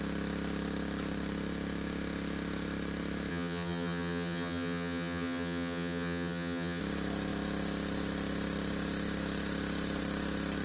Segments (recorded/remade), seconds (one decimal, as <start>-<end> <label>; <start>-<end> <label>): 0.0-3.3 recorded; 3.3-6.8 remade; 6.8-10.6 recorded